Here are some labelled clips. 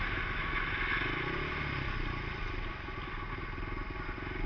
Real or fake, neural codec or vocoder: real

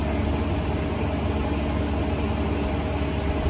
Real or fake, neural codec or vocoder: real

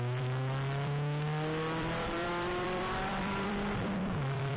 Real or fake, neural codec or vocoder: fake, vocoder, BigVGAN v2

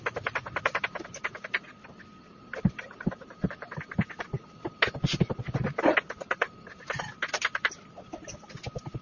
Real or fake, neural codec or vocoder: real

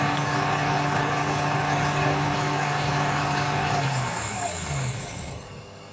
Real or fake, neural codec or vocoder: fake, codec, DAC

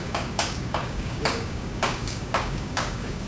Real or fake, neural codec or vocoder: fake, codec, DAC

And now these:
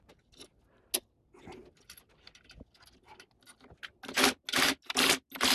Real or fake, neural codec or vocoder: real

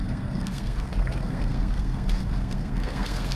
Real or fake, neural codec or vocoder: fake, codec, SNAC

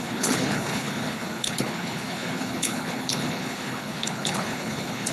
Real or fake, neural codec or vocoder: fake, codec, HILCodec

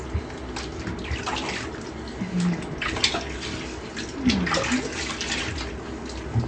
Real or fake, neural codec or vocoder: real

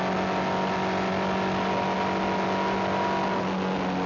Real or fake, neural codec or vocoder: real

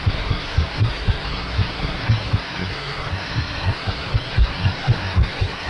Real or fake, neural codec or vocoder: fake, codec, SNAC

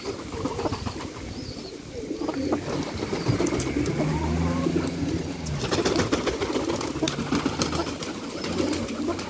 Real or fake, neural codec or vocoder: real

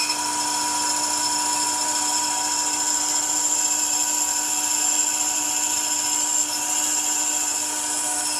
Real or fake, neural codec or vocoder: real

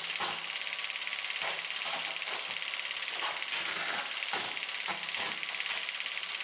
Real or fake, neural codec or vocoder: real